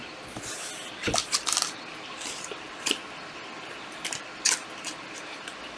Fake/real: real